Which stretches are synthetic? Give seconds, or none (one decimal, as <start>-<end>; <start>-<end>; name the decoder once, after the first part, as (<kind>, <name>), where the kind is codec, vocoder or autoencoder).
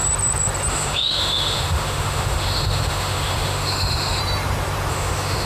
0.7-4.2 (autoencoder, DAC-VAE); 4.9-5.5